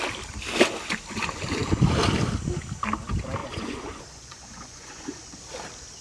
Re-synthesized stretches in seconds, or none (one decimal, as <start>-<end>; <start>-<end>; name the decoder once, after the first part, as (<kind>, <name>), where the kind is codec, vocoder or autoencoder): 3.4-5.4 (vocoder, Vocos)